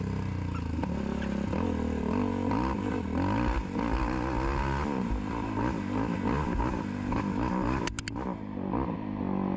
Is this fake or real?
real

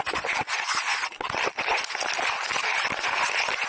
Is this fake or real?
real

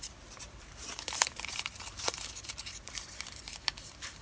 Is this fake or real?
fake